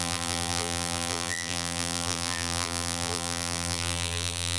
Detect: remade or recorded remade